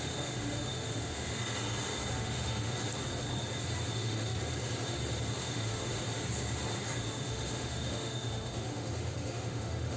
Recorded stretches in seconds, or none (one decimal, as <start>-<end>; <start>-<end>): 1.4-2.1; 2.8-3.9; 4.4-5.4; 5.9-7.1